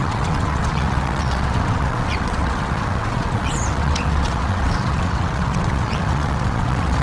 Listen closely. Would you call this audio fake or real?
fake